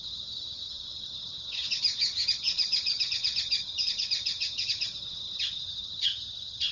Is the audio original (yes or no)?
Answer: no